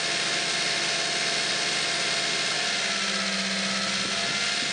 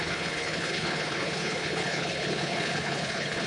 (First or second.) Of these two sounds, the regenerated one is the second